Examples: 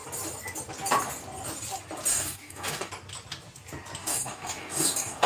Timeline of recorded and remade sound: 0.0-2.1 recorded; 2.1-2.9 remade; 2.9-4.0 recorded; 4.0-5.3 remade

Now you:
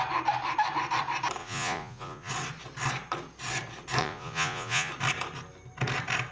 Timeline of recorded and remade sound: 0.0-1.4 recorded; 1.4-2.3 remade; 2.3-4.0 recorded; 4.0-4.9 remade; 4.9-6.3 recorded

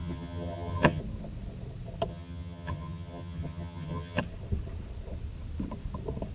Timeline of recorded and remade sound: 0.0-1.0 remade; 1.0-2.1 recorded; 2.1-4.2 remade; 4.2-6.3 recorded

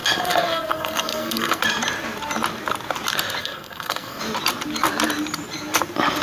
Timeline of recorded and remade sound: 0.0-1.6 remade; 1.6-3.4 recorded; 3.4-4.2 remade; 4.2-6.2 recorded

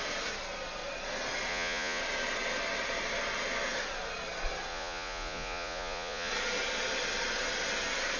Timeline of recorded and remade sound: 0.0-1.5 recorded; 1.5-2.0 remade; 2.0-4.7 recorded; 4.7-6.3 remade; 6.3-8.2 recorded